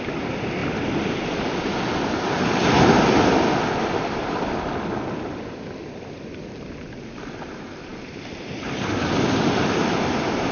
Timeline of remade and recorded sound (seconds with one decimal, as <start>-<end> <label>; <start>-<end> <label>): 0.0-10.5 recorded